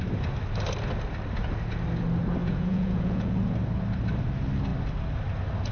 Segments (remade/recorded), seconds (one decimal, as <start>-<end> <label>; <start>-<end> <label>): 0.0-2.4 recorded; 2.4-3.4 remade; 3.4-5.7 recorded